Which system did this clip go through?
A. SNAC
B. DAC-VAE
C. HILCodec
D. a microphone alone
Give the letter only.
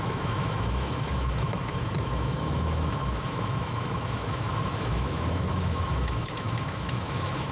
B